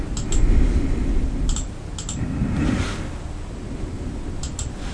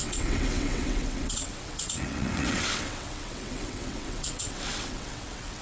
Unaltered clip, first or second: first